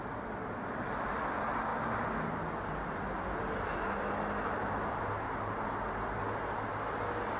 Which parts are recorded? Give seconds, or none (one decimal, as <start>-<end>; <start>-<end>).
0.0-7.4